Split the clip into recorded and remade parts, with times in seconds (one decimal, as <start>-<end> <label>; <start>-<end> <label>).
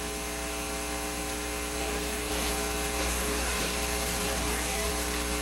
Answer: 0.0-1.8 recorded; 1.8-2.5 remade; 2.5-3.0 recorded; 3.0-3.6 remade; 3.6-4.2 recorded; 4.2-4.9 remade; 4.9-5.4 recorded